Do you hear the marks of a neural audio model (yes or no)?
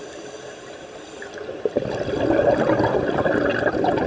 no